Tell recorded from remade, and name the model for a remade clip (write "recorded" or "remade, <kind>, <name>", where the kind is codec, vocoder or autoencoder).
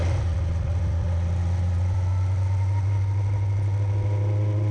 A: recorded